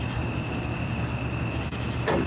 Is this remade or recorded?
recorded